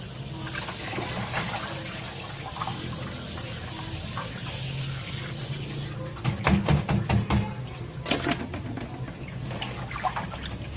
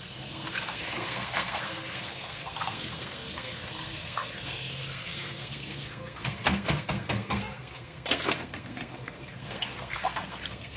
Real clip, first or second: first